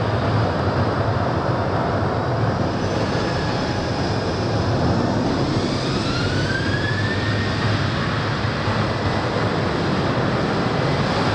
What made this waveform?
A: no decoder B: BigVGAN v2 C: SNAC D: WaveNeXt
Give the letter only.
A